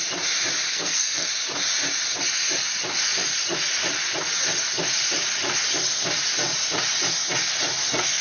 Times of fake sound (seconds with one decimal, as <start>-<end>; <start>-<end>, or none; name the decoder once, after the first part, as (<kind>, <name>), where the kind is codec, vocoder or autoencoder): 0.7-1.3 (codec, SNAC)